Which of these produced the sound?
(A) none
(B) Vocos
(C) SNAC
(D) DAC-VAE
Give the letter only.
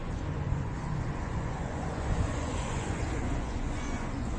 B